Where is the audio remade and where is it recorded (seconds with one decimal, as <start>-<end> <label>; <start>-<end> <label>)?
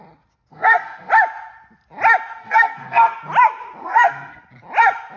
0.0-0.5 recorded; 0.5-1.1 remade; 1.1-2.4 recorded; 2.4-3.2 remade; 3.2-3.8 recorded; 3.8-4.4 remade; 4.4-5.2 recorded